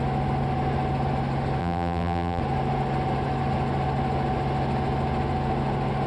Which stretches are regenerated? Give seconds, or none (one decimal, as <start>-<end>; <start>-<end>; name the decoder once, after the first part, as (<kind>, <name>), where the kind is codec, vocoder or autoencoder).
1.6-2.4 (vocoder, BigVGAN v2)